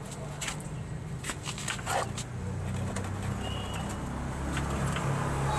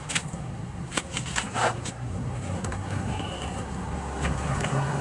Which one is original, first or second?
first